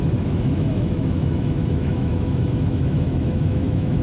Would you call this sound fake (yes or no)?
yes